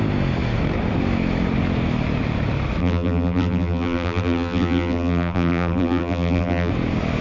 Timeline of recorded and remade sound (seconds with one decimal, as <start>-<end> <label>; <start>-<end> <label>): 0.0-2.8 recorded; 2.8-6.7 remade; 6.7-7.2 recorded